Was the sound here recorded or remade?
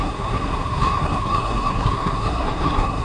remade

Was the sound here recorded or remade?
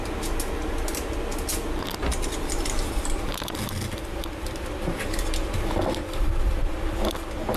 recorded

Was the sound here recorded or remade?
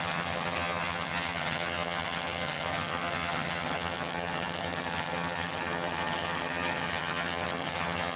remade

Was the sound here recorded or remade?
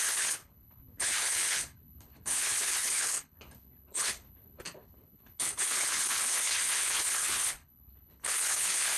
remade